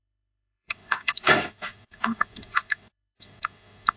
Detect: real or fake fake